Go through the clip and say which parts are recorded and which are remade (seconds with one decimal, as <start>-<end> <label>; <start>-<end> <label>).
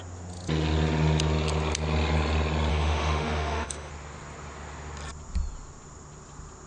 0.0-2.7 recorded; 2.7-3.9 remade; 3.9-6.7 recorded